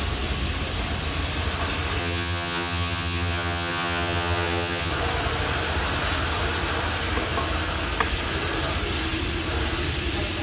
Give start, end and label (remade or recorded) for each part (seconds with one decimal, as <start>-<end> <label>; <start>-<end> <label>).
0.0-2.0 recorded; 2.0-4.9 remade; 4.9-10.4 recorded